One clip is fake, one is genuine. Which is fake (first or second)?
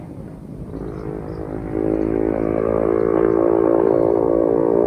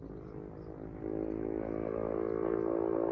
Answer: first